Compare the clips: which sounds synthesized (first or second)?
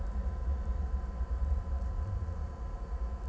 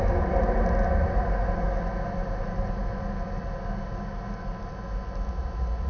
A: first